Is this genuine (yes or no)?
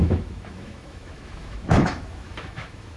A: no